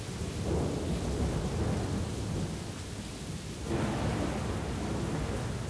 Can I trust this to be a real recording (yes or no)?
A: yes